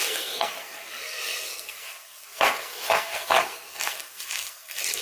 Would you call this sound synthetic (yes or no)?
yes